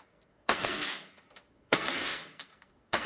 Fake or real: fake